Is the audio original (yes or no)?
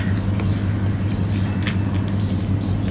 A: yes